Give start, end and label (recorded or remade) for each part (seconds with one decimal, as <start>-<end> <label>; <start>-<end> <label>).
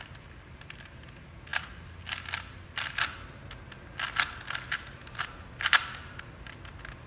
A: 0.0-7.1 recorded